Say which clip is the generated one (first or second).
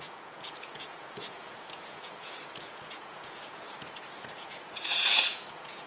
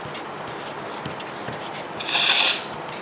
first